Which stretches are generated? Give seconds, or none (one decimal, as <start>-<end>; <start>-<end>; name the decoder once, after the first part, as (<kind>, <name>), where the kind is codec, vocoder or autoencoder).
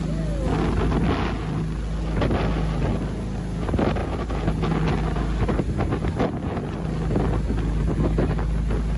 none